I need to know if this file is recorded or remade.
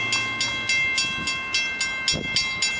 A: recorded